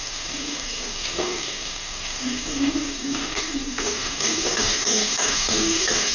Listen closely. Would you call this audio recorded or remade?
remade